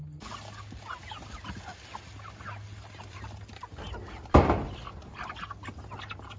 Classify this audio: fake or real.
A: real